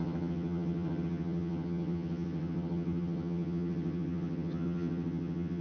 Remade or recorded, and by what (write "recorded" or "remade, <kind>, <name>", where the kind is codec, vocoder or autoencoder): remade, vocoder, HiFi-GAN